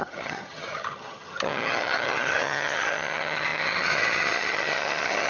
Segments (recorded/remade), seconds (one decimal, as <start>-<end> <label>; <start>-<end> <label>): 0.0-5.3 remade